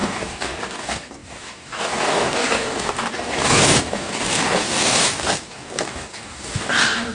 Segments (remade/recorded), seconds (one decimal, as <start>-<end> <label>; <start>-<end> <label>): 0.0-7.1 remade